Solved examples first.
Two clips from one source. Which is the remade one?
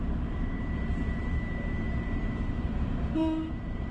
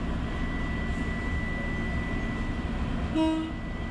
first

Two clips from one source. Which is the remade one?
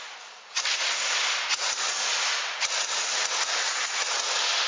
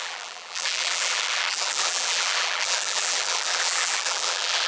second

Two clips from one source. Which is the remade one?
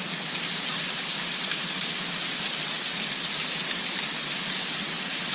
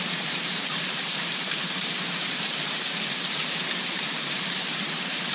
second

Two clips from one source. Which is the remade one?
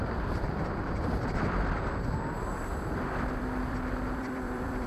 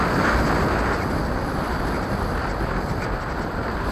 first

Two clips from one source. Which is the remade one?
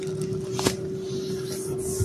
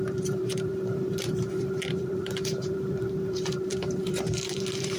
second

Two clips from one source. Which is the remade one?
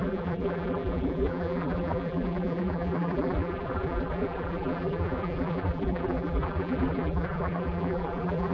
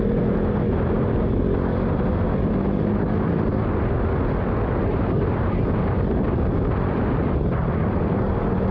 first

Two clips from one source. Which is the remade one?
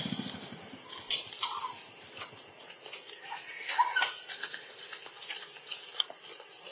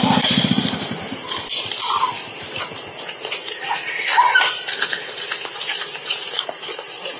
second